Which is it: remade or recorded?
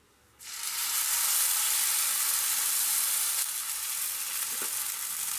recorded